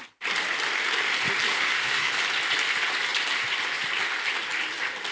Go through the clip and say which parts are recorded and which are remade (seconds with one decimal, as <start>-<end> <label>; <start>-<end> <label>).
0.0-1.5 recorded; 1.5-2.1 remade; 2.1-5.1 recorded